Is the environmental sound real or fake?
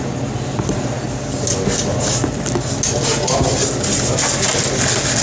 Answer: real